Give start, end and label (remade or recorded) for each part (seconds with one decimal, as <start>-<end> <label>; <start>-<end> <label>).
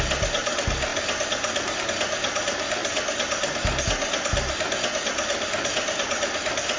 0.0-0.9 recorded; 0.9-1.8 remade; 1.8-6.8 recorded